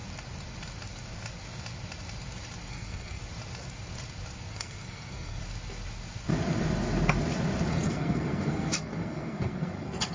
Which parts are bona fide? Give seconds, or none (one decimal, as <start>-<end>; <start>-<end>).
0.0-2.7; 3.2-4.5; 5.4-7.7